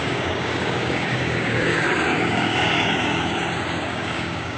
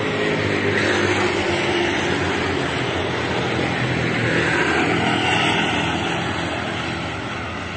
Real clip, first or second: second